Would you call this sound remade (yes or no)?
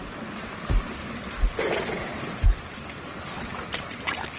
no